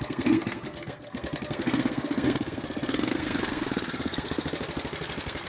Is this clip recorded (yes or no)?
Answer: no